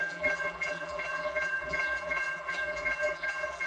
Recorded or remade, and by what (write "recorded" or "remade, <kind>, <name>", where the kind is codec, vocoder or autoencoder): remade, vocoder, BigVGAN v2